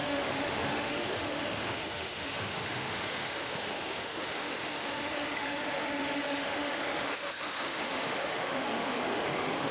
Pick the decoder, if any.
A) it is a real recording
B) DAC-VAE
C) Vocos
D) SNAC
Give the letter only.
B